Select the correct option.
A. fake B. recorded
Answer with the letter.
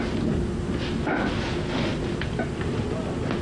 B